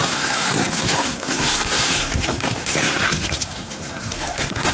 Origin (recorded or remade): remade